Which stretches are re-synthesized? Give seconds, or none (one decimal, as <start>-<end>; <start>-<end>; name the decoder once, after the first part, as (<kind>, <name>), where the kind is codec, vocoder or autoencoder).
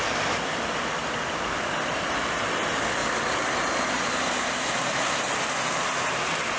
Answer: 3.0-5.2 (vocoder, BigVGAN v2)